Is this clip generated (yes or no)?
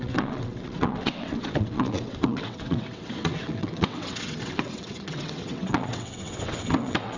yes